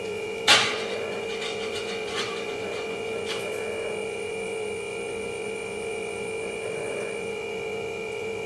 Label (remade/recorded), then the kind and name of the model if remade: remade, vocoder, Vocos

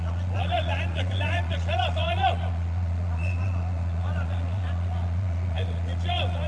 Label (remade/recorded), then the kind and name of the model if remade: remade, vocoder, Vocos